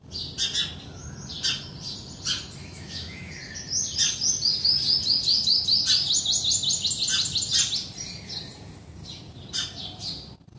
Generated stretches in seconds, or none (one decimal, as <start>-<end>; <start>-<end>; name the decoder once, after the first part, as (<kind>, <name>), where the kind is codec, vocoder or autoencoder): 2.6-3.3 (autoencoder, DAC-VAE)